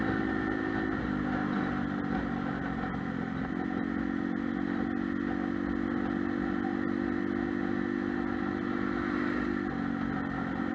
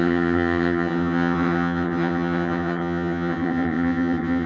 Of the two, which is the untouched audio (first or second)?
first